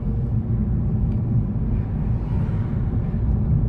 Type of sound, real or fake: real